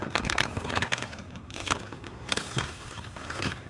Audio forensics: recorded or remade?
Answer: remade